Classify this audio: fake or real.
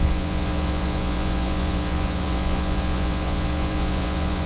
fake